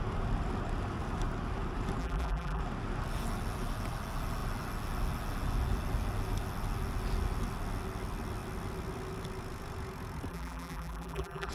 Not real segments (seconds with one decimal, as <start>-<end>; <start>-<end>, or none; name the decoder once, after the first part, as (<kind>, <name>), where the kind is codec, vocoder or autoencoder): 2.0-2.6 (vocoder, BigVGAN v2); 10.3-11.5